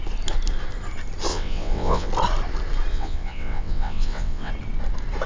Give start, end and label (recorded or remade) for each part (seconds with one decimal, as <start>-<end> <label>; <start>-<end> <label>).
0.0-1.3 recorded; 1.3-2.1 remade; 2.1-2.9 recorded; 2.9-4.5 remade; 4.5-5.3 recorded